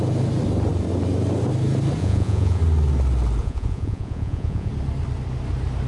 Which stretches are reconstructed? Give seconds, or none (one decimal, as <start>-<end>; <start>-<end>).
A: 2.0-2.6; 3.4-4.7